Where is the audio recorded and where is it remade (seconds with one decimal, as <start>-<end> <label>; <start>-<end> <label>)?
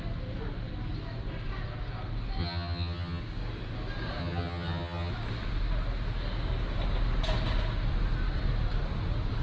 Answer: 0.0-2.4 recorded; 2.4-3.2 remade; 3.2-4.2 recorded; 4.2-5.1 remade; 5.1-9.4 recorded